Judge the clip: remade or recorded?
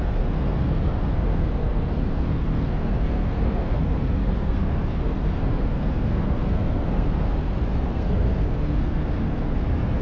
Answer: remade